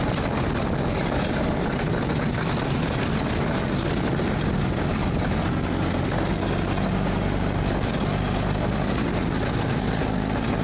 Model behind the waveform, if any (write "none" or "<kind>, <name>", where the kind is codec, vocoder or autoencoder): none